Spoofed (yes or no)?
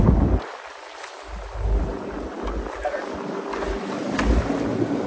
no